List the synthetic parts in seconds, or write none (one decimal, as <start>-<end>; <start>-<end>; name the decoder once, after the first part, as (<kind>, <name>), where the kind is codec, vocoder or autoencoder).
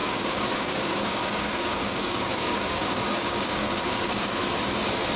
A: 0.0-4.4 (codec, DAC)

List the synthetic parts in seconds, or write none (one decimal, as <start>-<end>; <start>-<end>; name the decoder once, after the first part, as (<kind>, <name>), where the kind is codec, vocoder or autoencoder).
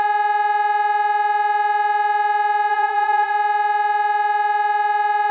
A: 2.7-3.3 (vocoder, Vocos)